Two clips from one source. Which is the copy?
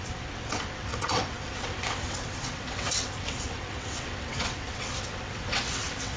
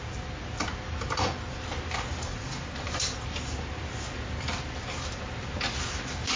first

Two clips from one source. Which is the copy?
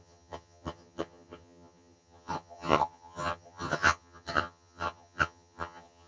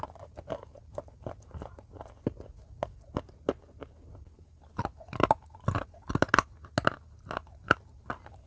first